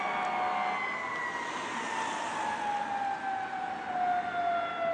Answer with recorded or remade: recorded